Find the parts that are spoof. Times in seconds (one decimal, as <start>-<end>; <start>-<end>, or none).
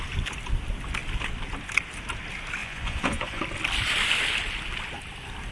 2.6-3.4